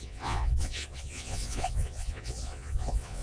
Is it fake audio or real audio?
fake